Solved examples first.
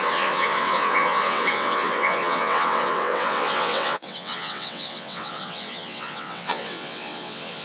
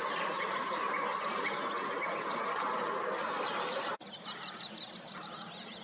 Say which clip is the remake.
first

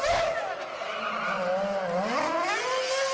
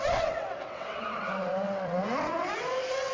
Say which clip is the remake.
second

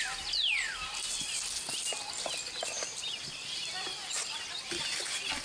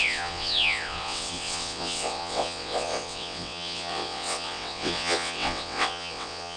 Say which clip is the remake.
second